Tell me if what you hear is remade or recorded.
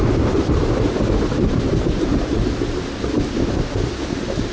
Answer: recorded